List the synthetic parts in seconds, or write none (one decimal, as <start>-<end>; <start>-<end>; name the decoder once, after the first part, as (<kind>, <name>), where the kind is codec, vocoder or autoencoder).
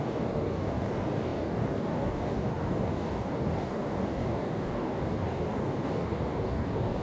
0.0-7.0 (codec, DAC)